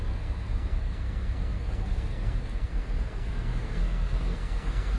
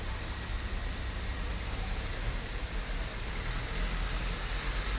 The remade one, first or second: first